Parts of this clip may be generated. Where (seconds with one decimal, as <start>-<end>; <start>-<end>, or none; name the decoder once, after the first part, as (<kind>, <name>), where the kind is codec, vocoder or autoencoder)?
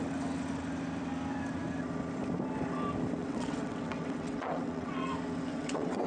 3.2-5.1 (vocoder, WaveNeXt); 5.5-6.1